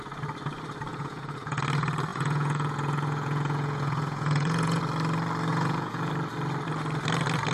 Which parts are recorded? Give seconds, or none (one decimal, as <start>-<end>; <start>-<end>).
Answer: 0.0-0.9; 1.6-2.1; 4.8-5.5; 6.1-7.5